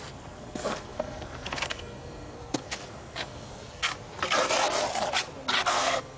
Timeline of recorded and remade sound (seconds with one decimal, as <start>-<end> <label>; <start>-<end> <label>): 0.0-3.9 remade; 3.9-5.7 recorded; 5.7-6.2 remade